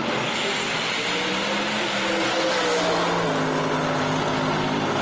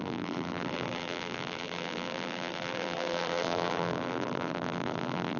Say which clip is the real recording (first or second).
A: first